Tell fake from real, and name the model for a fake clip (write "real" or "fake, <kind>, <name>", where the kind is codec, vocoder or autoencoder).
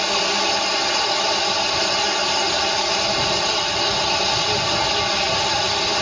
real